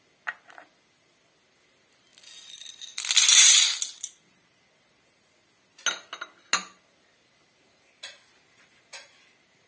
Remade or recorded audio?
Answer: recorded